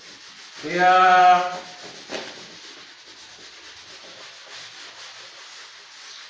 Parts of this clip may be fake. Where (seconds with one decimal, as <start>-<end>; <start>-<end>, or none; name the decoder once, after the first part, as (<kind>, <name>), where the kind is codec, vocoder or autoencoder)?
none